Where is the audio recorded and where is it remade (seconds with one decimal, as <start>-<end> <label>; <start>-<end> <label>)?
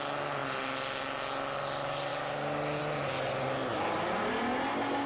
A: 0.0-5.1 recorded